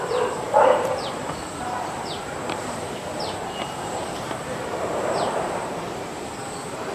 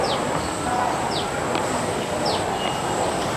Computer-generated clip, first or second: first